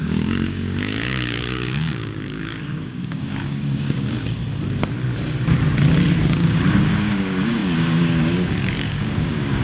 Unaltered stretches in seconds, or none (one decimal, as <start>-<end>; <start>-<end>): 4.4-6.2